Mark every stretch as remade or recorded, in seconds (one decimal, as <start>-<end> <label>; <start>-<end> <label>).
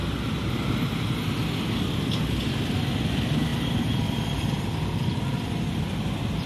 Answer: 0.0-3.5 recorded; 3.5-5.8 remade; 5.8-6.5 recorded